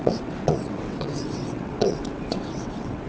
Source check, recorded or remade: remade